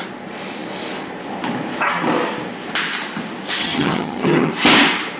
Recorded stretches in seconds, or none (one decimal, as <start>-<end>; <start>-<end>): 0.0-3.6; 4.5-5.2